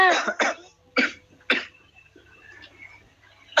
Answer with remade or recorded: recorded